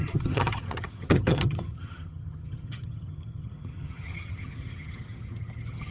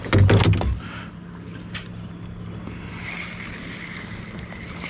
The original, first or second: second